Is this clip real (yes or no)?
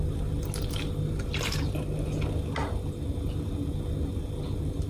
yes